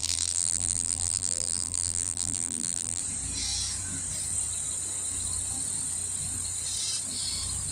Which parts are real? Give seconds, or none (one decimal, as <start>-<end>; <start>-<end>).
3.0-7.7